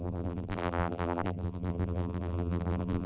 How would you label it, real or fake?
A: fake